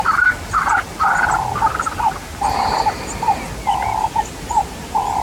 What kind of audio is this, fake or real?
real